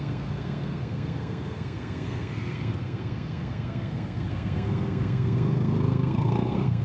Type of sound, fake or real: fake